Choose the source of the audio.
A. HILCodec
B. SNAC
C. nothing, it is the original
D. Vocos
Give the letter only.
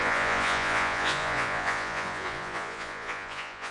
D